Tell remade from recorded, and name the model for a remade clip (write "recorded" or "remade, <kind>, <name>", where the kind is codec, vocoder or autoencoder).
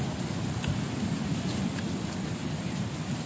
recorded